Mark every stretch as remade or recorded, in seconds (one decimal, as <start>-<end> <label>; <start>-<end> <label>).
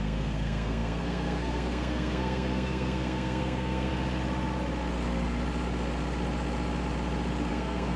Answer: 0.0-3.9 remade; 3.9-7.5 recorded; 7.5-8.0 remade